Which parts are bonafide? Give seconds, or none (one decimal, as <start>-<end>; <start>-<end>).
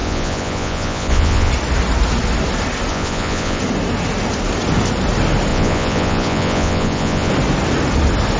1.5-2.9; 3.6-5.5; 7.3-8.4